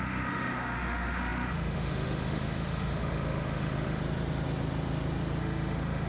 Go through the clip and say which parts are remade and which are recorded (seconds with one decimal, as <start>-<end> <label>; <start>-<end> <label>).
0.0-4.0 remade; 4.0-5.4 recorded; 5.4-6.1 remade